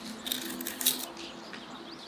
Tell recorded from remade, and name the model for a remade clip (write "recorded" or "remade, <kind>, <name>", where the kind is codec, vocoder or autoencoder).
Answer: recorded